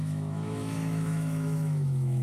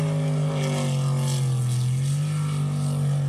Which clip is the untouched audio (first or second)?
second